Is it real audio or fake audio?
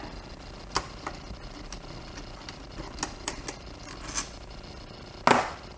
real